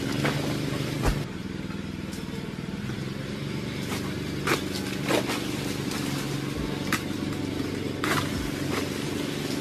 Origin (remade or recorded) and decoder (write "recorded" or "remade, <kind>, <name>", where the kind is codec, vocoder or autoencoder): recorded